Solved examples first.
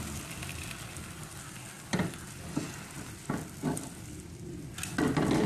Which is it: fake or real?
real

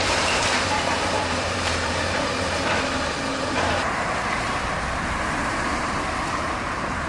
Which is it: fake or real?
fake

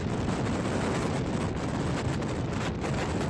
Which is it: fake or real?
real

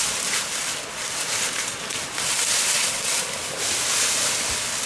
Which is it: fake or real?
real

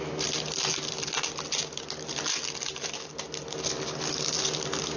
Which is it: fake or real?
real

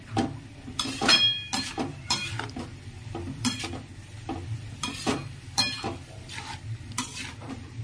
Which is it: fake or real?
fake